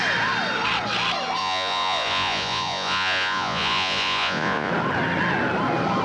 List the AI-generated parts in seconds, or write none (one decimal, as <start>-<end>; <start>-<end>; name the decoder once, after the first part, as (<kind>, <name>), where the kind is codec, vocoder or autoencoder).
1.4-4.7 (vocoder, Vocos)